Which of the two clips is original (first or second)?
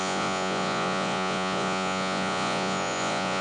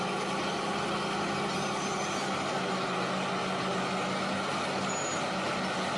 second